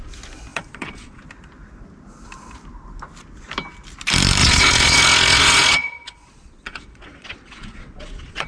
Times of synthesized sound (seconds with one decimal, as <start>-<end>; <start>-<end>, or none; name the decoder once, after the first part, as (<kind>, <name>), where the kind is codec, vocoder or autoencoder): 0.5-1.2 (vocoder, Vocos); 4.4-8.5